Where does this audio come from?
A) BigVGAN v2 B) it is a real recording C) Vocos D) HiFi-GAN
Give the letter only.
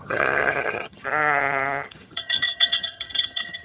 D